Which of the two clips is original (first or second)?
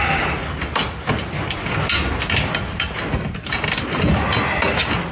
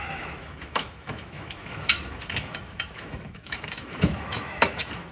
first